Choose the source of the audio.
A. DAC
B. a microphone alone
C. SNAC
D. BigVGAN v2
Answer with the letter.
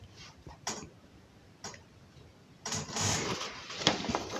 D